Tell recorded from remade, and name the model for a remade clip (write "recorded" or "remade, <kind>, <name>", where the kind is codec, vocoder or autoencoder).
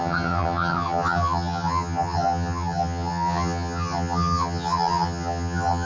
remade, vocoder, HiFi-GAN